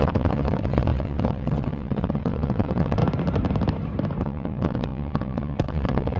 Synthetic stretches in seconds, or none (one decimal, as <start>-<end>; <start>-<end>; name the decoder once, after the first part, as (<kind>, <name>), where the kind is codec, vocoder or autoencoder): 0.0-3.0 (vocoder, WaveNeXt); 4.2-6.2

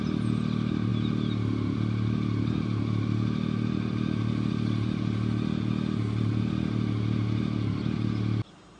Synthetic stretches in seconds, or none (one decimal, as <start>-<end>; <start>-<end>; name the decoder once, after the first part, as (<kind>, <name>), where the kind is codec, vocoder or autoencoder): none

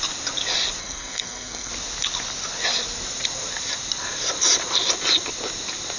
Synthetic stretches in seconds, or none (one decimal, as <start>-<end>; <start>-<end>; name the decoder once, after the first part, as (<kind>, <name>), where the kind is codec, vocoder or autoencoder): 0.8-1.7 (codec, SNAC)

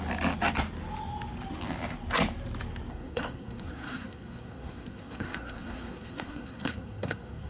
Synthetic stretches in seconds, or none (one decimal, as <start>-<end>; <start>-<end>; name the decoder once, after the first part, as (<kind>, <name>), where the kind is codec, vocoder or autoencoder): 2.9-7.5 (codec, SNAC)

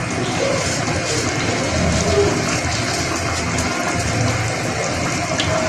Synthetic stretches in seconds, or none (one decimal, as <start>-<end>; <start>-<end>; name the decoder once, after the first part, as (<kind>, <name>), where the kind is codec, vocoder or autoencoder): 0.0-0.8 (vocoder, BigVGAN v2)